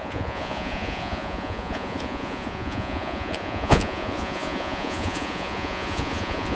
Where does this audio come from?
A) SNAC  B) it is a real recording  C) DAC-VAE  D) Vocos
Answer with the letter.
D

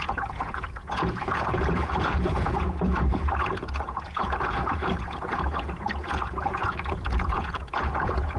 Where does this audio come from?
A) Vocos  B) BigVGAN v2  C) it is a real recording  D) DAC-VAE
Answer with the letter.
A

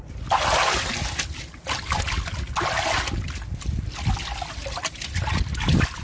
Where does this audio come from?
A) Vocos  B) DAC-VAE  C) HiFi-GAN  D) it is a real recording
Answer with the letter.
D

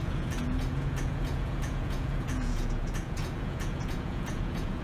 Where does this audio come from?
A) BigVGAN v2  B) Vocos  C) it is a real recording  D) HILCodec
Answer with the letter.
B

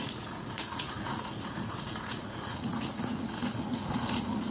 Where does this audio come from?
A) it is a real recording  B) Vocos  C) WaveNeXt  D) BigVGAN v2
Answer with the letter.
B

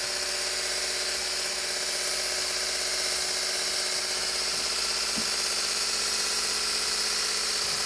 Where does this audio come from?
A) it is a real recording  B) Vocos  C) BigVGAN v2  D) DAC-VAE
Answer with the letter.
A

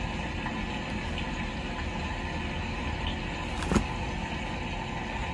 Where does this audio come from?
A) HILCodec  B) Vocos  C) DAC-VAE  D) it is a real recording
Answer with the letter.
D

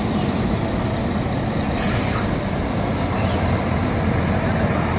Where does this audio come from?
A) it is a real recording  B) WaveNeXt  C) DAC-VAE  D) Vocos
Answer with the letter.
A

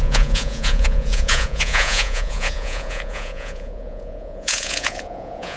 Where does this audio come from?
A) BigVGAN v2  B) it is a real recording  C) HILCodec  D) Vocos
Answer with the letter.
D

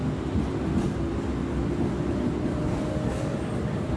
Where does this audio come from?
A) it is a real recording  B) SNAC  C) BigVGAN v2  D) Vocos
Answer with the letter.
A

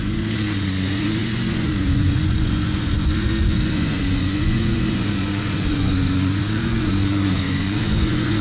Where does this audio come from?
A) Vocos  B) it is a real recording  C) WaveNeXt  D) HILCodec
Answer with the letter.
A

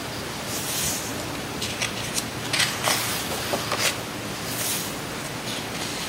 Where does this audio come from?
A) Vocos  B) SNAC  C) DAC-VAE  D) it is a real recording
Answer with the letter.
D